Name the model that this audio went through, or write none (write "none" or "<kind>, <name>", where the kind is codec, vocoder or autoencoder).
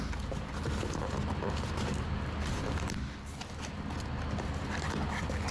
none